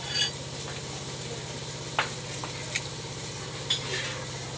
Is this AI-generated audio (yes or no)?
no